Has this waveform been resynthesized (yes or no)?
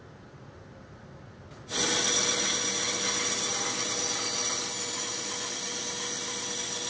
no